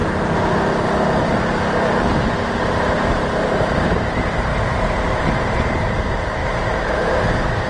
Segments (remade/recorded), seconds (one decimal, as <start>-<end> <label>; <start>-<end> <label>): 0.0-3.4 recorded; 3.4-4.5 remade; 4.5-5.2 recorded; 5.2-6.4 remade; 6.4-7.7 recorded